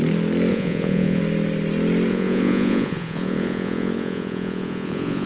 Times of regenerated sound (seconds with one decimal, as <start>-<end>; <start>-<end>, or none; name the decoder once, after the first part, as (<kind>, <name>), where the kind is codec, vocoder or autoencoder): 0.5-1.2 (vocoder, Vocos); 2.1-5.3